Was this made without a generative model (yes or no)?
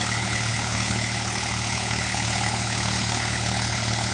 no